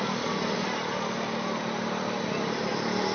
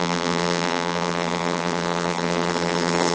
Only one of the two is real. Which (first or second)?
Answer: first